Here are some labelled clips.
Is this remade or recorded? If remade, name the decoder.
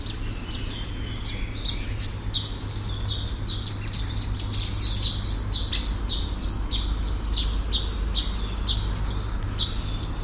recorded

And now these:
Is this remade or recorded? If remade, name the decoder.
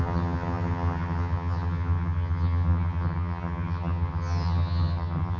remade, vocoder, HiFi-GAN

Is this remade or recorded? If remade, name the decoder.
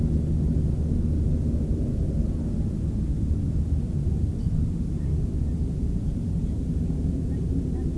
recorded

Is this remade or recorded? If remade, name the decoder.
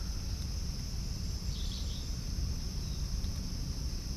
recorded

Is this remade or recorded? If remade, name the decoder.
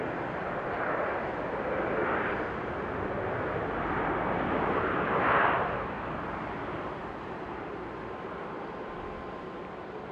recorded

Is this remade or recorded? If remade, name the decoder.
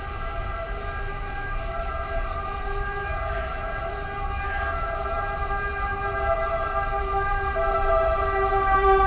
remade, vocoder, BigVGAN v2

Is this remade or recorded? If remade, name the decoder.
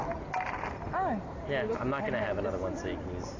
recorded